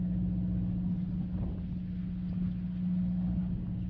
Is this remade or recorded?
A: recorded